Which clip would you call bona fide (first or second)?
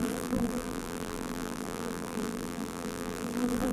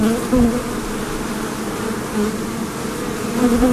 second